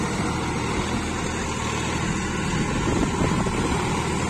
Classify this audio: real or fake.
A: real